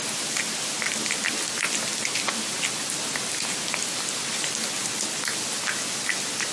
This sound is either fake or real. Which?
real